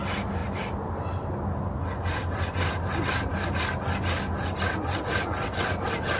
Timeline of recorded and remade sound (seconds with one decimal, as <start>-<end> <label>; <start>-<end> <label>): 0.0-6.2 recorded